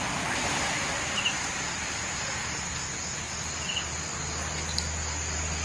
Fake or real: real